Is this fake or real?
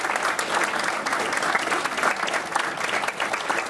real